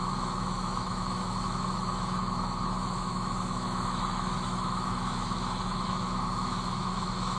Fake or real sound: fake